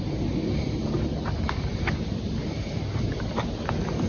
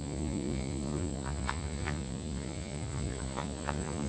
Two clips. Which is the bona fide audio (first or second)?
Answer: first